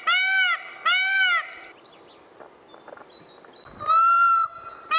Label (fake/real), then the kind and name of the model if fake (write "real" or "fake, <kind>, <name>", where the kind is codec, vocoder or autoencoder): real